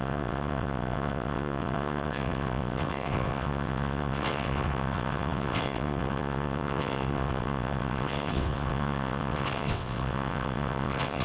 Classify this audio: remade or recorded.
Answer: remade